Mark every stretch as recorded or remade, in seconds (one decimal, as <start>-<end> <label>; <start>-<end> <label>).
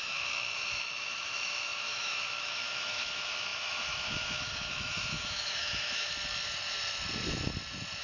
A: 0.0-6.1 remade; 6.1-8.0 recorded